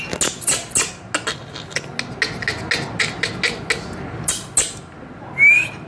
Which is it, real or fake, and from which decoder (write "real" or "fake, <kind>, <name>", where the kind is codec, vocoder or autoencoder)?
real